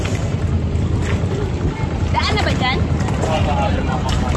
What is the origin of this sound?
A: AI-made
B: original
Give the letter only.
B